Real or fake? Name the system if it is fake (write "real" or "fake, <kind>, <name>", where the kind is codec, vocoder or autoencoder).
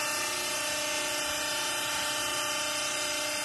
real